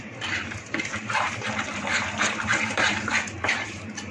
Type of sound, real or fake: fake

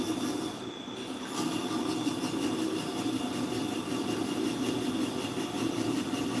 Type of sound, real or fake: real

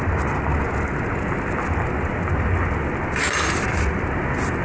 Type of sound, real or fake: real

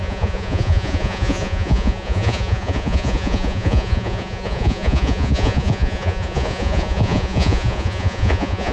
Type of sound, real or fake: fake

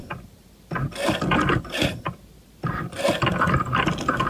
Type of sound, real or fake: fake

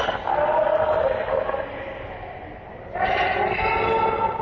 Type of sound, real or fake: real